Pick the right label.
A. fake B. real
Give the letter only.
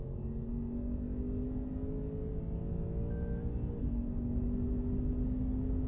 B